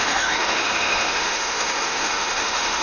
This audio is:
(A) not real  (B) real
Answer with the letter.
A